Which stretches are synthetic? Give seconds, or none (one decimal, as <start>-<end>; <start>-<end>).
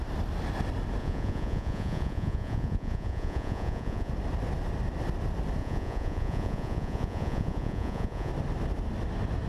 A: 1.0-4.1; 5.6-8.3